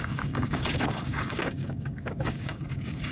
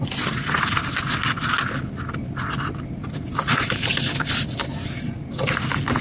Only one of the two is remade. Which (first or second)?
first